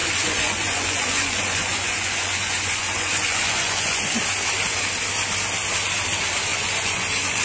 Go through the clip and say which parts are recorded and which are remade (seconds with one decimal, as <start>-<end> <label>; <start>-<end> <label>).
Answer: 0.0-4.1 remade; 4.1-6.5 recorded; 6.5-7.4 remade